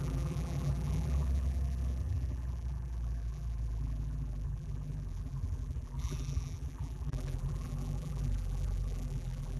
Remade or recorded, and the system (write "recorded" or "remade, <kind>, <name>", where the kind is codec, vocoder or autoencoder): remade, vocoder, BigVGAN v2